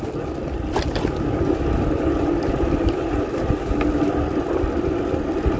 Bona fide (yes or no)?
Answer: yes